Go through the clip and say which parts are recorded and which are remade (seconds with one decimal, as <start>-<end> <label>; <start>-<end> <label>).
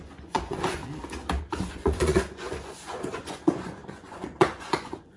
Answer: 0.0-0.8 remade; 0.8-1.4 recorded; 1.4-5.2 remade